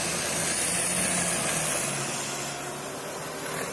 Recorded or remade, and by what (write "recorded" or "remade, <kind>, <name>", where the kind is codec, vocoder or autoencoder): recorded